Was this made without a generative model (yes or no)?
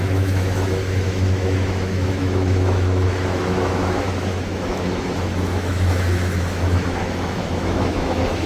no